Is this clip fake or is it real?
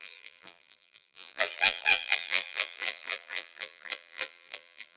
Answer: fake